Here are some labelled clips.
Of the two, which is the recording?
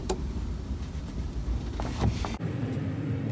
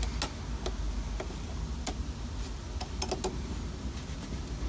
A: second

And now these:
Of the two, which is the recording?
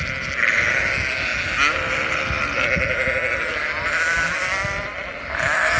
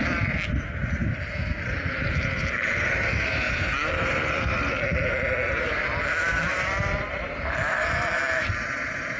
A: first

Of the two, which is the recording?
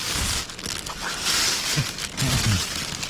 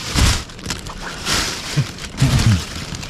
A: first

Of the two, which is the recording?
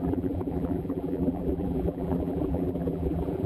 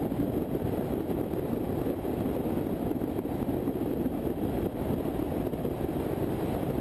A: second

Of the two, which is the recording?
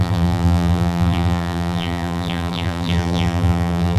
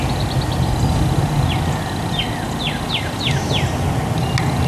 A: second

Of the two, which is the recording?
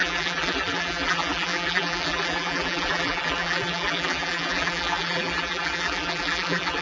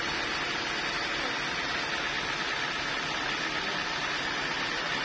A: second